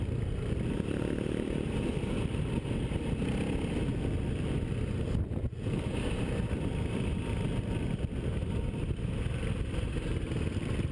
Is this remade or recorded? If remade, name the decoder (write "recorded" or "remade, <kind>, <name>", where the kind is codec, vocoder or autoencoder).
recorded